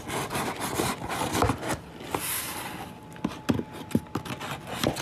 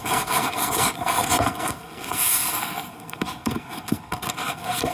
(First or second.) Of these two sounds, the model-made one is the second